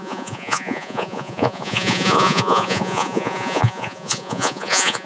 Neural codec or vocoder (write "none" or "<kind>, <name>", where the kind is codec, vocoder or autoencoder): vocoder, Vocos